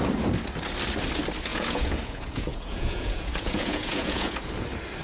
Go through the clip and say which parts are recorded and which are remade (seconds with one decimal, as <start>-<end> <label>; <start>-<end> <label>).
0.0-1.5 recorded; 1.5-4.5 remade; 4.5-5.0 recorded